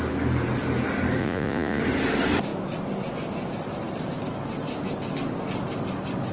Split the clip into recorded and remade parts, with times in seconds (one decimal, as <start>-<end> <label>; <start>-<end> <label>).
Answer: 0.0-1.2 recorded; 1.2-1.8 remade; 1.8-6.3 recorded